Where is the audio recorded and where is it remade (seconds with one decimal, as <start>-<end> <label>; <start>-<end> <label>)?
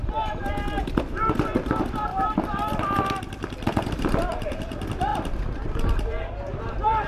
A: 0.0-7.1 remade